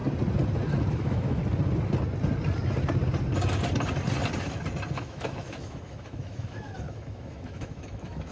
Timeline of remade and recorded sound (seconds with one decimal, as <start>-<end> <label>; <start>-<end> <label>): 0.0-0.9 recorded; 0.9-1.4 remade; 1.4-4.9 recorded; 4.9-8.3 remade